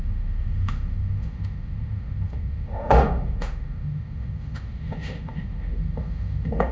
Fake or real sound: fake